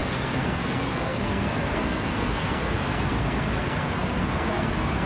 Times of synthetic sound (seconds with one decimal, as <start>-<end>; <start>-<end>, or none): 0.0-5.1